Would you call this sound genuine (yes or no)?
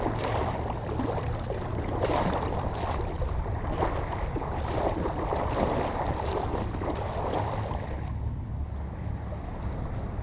yes